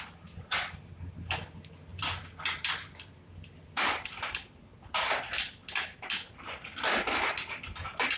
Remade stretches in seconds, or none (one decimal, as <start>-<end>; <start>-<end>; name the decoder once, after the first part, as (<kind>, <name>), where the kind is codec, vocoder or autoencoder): 1.9-5.0 (vocoder, BigVGAN v2)